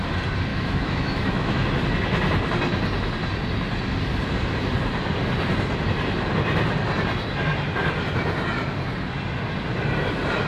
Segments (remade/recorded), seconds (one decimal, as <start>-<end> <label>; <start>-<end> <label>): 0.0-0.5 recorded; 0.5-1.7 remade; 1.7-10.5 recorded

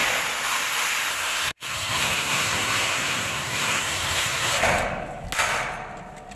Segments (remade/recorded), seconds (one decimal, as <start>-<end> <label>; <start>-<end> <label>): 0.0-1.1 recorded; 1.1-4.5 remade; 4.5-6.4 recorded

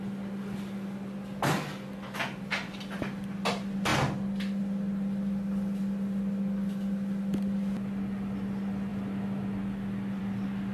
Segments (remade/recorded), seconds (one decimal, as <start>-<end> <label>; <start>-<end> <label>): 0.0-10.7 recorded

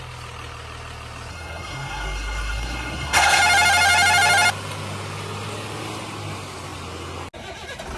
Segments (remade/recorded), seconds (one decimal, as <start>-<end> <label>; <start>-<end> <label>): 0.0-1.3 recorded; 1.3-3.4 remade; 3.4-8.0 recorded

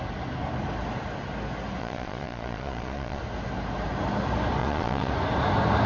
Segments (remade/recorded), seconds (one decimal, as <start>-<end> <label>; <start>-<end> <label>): 0.0-1.8 recorded; 1.8-3.2 remade; 3.2-4.6 recorded; 4.6-5.1 remade; 5.1-5.9 recorded

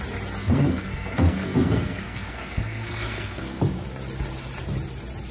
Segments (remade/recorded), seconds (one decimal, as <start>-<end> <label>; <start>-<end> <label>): 0.0-0.4 recorded; 0.4-3.6 remade; 3.6-5.3 recorded

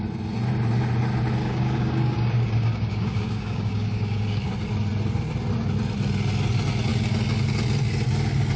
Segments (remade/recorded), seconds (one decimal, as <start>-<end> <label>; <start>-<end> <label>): 0.0-1.4 recorded; 1.4-4.5 remade; 4.5-8.6 recorded